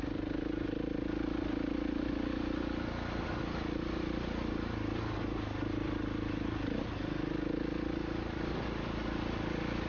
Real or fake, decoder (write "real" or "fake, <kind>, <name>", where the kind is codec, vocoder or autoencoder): real